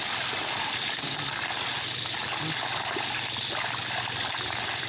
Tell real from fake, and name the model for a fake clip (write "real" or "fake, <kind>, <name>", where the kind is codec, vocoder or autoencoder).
real